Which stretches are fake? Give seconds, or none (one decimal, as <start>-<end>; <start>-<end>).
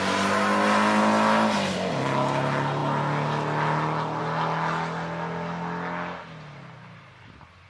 none